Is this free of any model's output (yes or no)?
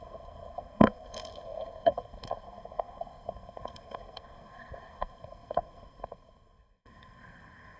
no